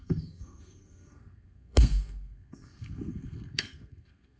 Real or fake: fake